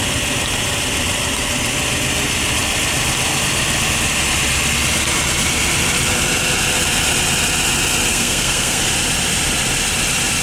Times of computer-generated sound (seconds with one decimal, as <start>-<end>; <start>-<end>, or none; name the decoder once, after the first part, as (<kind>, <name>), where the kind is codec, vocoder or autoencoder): 8.1-8.8 (codec, SNAC)